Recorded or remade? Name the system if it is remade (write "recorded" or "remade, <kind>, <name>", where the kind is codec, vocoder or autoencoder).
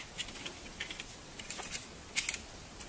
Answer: recorded